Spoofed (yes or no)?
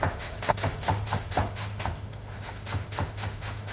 yes